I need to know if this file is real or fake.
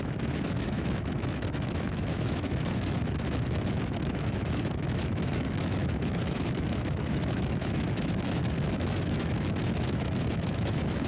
fake